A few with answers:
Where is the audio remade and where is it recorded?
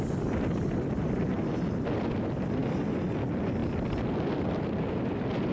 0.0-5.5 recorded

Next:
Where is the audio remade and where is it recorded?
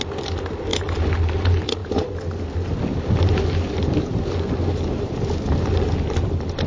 0.0-6.7 recorded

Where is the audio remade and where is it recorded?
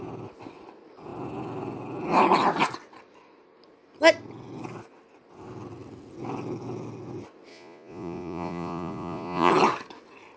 0.0-7.5 recorded; 7.5-9.5 remade; 9.5-10.4 recorded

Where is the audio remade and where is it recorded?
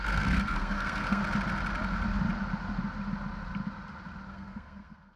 0.0-1.2 remade; 1.2-4.3 recorded; 4.3-5.2 remade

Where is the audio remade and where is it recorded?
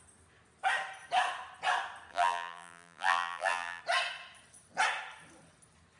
0.0-2.1 recorded; 2.1-3.8 remade; 3.8-6.0 recorded